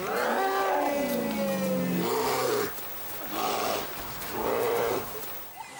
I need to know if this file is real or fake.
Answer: real